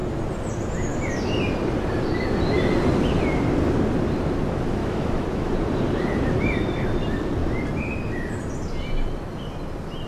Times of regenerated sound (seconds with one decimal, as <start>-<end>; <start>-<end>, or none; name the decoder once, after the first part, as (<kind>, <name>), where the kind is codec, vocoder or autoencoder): 4.8-5.5 (autoencoder, DAC-VAE)